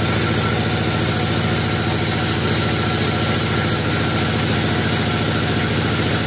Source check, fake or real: real